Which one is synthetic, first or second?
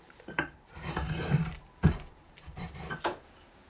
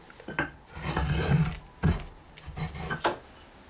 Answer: first